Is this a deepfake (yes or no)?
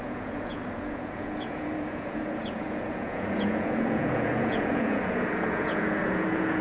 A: yes